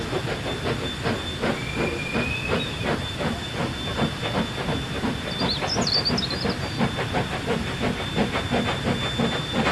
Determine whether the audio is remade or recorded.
recorded